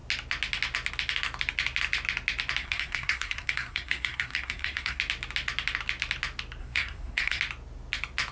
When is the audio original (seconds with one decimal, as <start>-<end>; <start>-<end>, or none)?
0.0-2.6; 5.0-6.6; 7.4-8.3